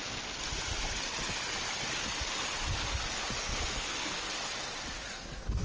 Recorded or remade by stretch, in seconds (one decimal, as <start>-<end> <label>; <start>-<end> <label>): 0.0-3.4 recorded; 3.4-4.3 remade; 4.3-5.1 recorded; 5.1-5.6 remade